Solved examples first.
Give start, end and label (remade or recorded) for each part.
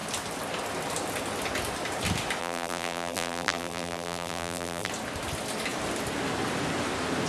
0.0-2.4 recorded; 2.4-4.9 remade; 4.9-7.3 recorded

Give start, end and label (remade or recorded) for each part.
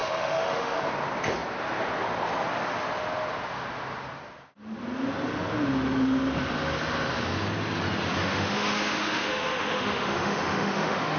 0.0-0.8 remade; 0.8-8.2 recorded; 8.2-11.2 remade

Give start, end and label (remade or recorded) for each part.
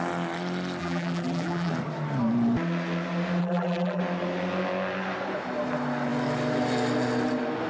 0.0-0.8 recorded; 0.8-1.7 remade; 1.7-3.4 recorded; 3.4-4.0 remade; 4.0-7.7 recorded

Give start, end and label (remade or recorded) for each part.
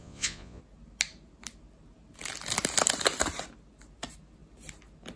0.0-0.6 remade; 0.6-5.2 recorded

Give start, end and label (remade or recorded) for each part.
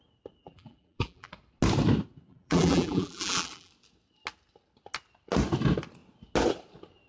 0.0-0.4 recorded; 0.4-1.3 remade; 1.3-2.3 recorded; 2.3-3.7 remade; 3.7-7.1 recorded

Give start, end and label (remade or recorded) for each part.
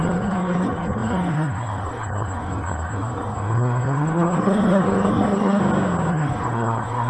0.0-5.6 remade; 5.6-6.1 recorded; 6.1-7.1 remade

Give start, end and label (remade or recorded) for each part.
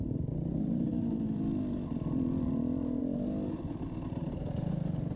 0.0-5.2 recorded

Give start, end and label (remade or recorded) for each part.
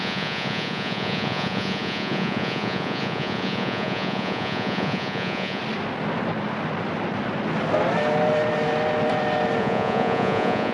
0.0-5.6 remade; 5.6-9.6 recorded; 9.6-10.7 remade